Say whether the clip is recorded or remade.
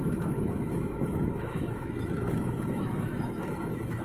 remade